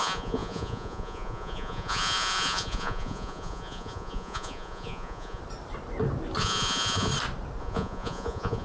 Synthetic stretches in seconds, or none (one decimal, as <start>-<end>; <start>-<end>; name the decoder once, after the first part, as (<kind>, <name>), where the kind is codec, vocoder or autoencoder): 0.0-5.4 (vocoder, Vocos); 6.4-7.1; 7.6-8.6